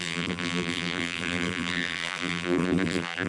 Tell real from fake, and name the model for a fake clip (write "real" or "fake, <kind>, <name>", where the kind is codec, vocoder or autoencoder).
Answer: fake, vocoder, BigVGAN v2